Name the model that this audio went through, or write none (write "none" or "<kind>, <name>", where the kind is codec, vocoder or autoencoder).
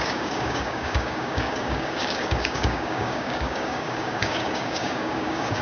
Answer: codec, DAC